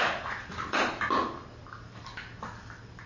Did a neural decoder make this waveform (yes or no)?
no